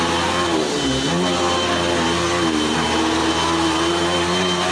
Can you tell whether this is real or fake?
real